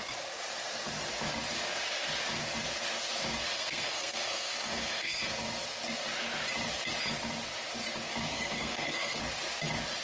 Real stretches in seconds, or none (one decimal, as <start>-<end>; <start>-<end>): 0.0-3.5; 5.2-8.3; 9.2-10.0